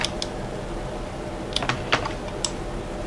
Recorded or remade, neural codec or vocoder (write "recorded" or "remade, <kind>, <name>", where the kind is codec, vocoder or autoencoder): recorded